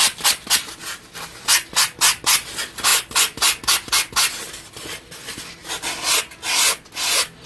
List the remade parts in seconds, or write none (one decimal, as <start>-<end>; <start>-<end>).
none